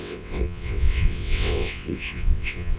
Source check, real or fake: fake